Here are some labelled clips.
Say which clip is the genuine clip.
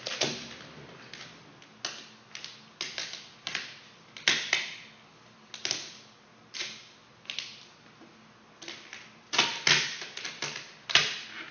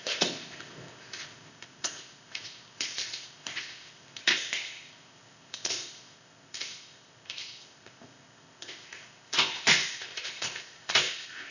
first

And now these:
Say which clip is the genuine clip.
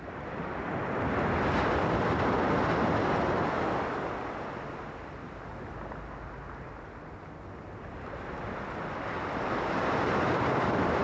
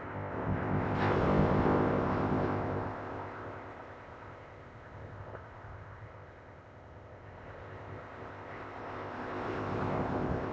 first